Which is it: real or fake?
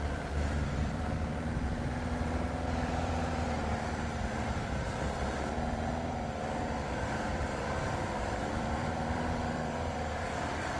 fake